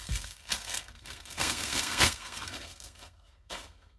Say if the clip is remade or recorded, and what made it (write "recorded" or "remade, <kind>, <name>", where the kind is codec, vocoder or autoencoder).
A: remade, codec, SNAC